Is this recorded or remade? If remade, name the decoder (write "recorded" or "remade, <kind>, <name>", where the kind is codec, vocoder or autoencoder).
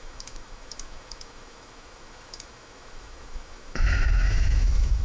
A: remade, autoencoder, DAC-VAE